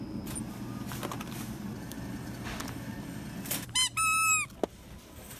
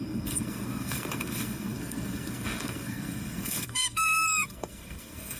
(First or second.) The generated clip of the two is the second